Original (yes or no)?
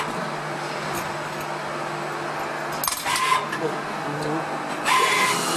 yes